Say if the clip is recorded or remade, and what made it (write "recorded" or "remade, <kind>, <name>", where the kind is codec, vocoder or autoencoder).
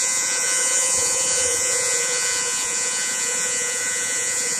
remade, vocoder, Vocos